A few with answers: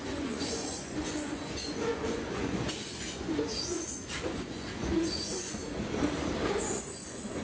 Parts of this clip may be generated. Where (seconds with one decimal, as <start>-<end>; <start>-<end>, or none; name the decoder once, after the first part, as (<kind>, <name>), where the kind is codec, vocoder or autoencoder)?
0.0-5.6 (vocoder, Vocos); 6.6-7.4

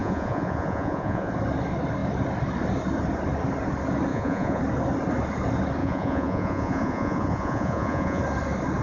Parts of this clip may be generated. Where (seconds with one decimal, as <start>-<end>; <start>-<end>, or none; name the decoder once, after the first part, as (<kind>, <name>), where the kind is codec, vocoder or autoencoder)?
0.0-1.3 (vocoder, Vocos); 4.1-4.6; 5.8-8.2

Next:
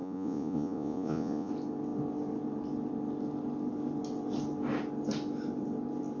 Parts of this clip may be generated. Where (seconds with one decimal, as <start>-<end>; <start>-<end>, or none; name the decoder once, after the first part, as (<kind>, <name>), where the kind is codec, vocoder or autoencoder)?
0.0-1.5 (vocoder, Vocos)